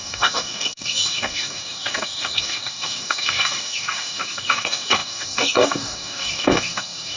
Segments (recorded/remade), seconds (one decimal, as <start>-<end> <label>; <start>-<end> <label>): 0.0-7.2 remade